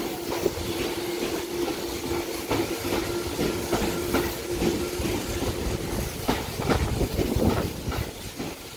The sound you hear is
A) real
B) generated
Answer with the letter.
A